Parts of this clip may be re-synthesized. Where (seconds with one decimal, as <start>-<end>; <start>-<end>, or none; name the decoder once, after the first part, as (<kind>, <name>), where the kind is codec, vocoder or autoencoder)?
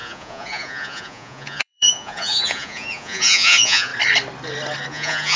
0.0-3.9 (vocoder, Vocos); 4.9-5.4